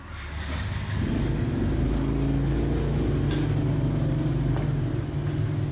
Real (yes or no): yes